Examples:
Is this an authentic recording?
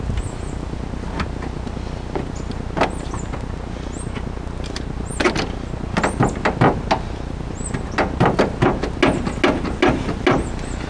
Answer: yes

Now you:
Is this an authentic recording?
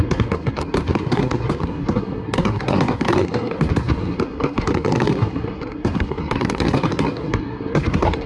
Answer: no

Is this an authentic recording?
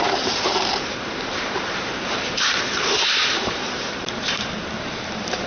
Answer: no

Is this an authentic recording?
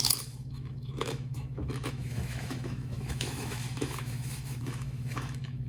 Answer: no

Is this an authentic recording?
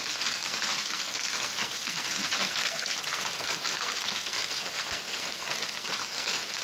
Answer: no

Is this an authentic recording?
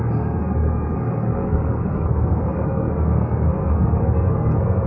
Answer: no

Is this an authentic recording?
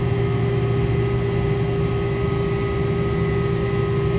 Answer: yes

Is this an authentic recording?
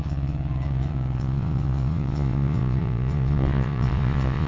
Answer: no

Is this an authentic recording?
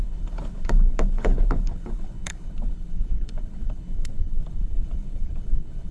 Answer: no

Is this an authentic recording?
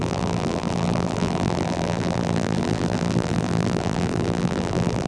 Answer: no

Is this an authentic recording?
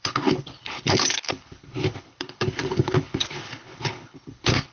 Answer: no